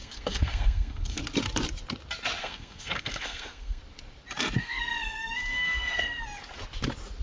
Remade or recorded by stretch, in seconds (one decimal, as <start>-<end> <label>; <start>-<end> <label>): 0.0-1.2 remade; 1.2-2.4 recorded; 2.4-3.8 remade; 3.8-4.6 recorded; 4.6-6.2 remade; 6.2-7.2 recorded